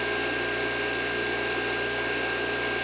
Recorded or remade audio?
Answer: recorded